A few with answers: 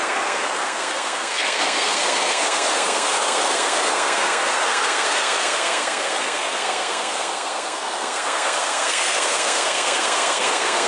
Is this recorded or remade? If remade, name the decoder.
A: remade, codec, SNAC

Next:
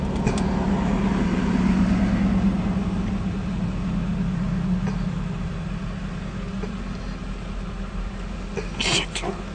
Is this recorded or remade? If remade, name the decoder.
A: recorded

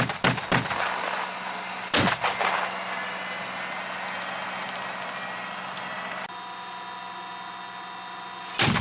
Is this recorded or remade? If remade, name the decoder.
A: recorded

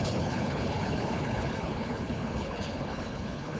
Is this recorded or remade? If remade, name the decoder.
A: remade, codec, HILCodec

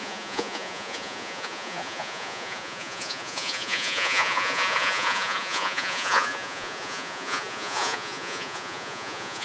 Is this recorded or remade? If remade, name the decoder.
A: remade, vocoder, Vocos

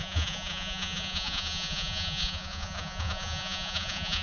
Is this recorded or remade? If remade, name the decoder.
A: remade, vocoder, Vocos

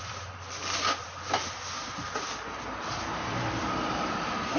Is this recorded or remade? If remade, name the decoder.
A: remade, vocoder, BigVGAN v2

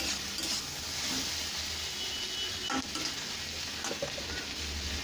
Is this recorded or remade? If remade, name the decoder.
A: recorded